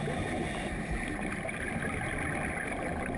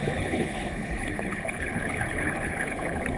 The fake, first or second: second